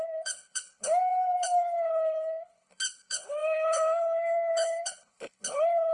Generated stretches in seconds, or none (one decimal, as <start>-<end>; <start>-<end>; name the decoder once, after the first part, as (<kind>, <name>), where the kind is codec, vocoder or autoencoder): 0.0-5.9 (codec, HILCodec)